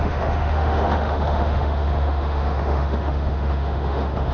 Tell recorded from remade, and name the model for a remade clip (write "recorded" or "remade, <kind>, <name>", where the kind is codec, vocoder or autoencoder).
remade, autoencoder, DAC-VAE